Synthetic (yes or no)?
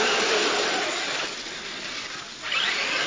yes